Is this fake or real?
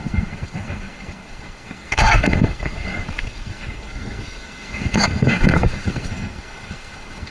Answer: fake